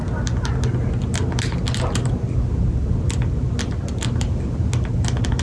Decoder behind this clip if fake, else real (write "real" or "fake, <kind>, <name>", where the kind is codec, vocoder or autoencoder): real